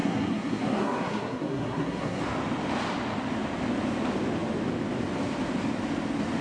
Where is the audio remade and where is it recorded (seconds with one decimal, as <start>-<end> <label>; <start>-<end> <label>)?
0.0-2.2 remade; 2.2-6.4 recorded